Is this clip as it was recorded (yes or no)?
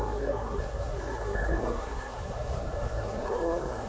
no